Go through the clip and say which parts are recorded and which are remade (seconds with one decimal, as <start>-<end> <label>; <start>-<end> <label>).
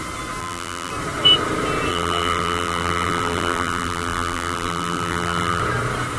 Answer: 0.0-0.4 recorded; 0.4-0.9 remade; 0.9-1.9 recorded; 1.9-5.6 remade; 5.6-6.2 recorded